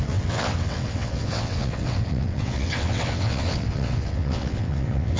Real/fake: fake